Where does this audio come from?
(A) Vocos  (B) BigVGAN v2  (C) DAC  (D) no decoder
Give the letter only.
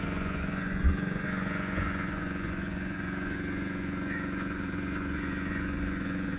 A